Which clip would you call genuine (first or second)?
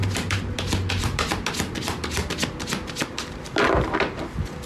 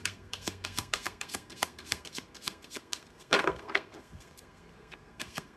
first